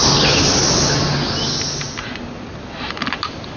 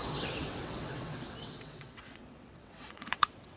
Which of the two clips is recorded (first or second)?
first